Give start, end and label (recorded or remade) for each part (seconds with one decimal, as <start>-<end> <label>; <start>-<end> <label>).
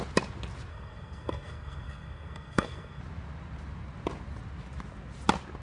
0.0-0.7 recorded; 0.7-3.0 remade; 3.0-5.6 recorded